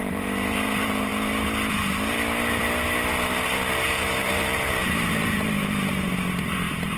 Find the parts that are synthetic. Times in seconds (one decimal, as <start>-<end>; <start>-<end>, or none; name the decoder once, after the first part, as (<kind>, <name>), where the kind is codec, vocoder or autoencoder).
0.0-1.1 (vocoder, BigVGAN v2); 3.1-7.0